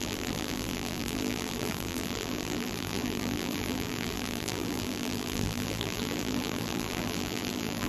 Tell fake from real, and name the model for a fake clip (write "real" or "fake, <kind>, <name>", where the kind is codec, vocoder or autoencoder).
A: fake, vocoder, BigVGAN v2